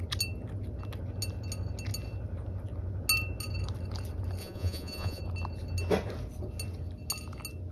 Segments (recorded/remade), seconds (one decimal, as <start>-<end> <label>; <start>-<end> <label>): 0.0-4.4 recorded; 4.4-5.2 remade; 5.2-7.7 recorded